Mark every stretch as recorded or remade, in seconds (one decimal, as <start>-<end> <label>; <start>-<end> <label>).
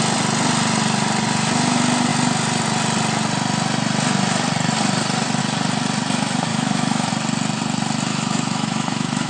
0.0-6.5 recorded; 6.5-7.1 remade; 7.1-8.1 recorded; 8.1-9.3 remade